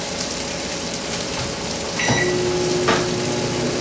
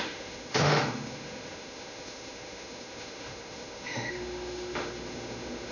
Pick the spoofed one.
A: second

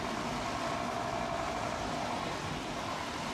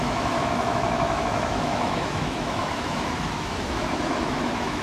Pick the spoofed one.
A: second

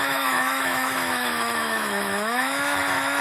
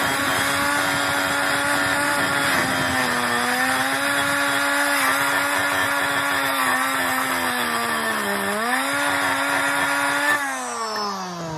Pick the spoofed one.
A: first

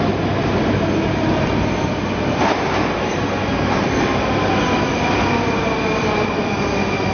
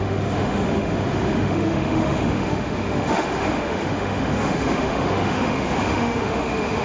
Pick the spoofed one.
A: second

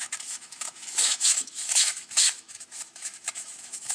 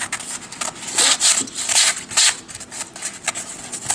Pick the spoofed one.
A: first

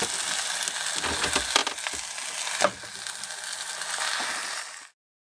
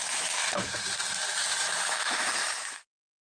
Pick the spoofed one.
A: second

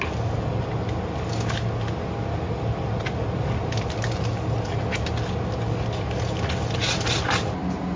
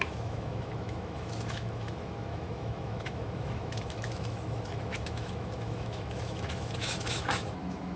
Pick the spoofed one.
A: second